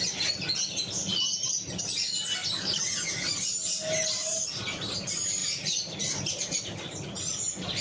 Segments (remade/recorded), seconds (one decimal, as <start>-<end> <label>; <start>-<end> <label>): 0.0-7.8 recorded